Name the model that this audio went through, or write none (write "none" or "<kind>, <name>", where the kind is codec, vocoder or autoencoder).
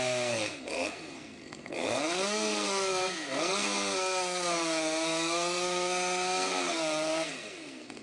codec, SNAC